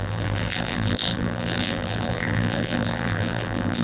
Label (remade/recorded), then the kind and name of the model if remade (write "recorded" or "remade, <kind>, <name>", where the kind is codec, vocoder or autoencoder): remade, vocoder, BigVGAN v2